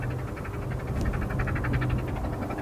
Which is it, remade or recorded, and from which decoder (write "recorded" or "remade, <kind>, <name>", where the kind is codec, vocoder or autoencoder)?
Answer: recorded